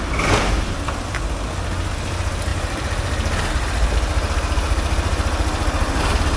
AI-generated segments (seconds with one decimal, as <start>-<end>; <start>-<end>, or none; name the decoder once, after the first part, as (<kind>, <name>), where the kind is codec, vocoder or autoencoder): none